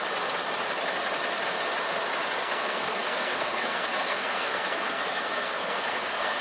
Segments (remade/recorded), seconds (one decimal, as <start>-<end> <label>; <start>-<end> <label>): 0.0-2.4 recorded; 2.4-6.4 remade